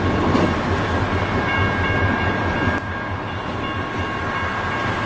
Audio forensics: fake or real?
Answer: real